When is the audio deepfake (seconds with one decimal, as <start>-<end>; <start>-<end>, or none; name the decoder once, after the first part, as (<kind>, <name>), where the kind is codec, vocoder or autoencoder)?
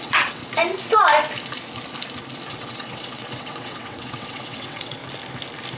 0.0-0.4 (vocoder, WaveNeXt); 2.5-5.0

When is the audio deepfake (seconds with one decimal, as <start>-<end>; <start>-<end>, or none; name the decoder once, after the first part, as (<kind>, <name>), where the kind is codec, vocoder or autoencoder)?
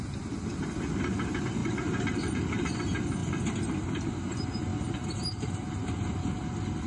1.6-2.8 (vocoder, BigVGAN v2); 4.7-6.2